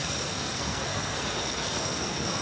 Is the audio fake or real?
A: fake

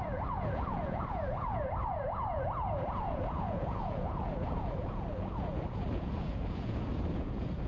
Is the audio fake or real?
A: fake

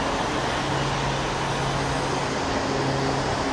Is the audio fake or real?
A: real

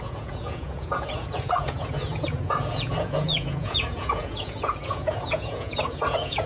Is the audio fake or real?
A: fake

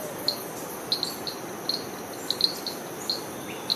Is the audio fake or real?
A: real